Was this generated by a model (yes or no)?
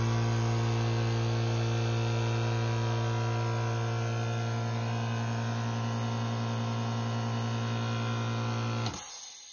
no